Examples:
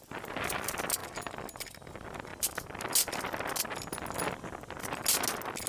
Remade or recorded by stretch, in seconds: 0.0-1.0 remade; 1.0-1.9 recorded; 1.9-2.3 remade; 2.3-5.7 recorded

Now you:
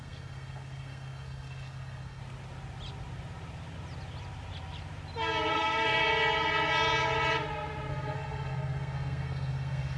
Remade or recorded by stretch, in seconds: 0.0-2.2 remade; 2.2-5.5 recorded; 5.5-6.0 remade; 6.0-7.9 recorded; 7.9-10.0 remade

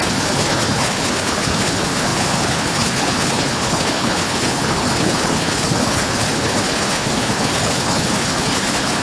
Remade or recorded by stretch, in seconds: 0.0-9.0 remade